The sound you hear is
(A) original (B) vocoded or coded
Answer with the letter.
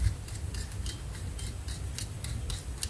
A